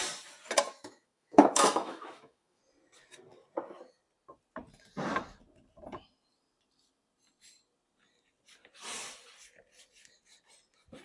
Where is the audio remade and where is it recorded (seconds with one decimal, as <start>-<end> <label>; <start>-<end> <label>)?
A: 0.0-0.7 recorded; 0.7-2.6 remade; 2.6-11.0 recorded